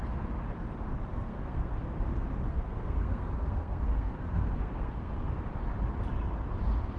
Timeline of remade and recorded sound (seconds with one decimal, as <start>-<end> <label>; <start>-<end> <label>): 0.0-1.1 recorded; 1.1-1.8 remade; 1.8-2.5 recorded; 2.5-5.4 remade; 5.4-7.0 recorded